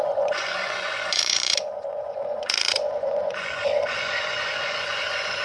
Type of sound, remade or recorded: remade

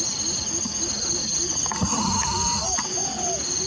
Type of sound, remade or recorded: recorded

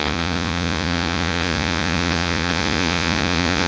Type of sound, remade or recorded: remade